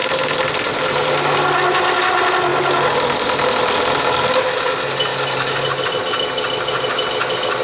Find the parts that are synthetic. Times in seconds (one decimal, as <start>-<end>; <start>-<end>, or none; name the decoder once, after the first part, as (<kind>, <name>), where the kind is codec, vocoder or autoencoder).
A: 0.0-0.5 (vocoder, BigVGAN v2); 5.1-6.0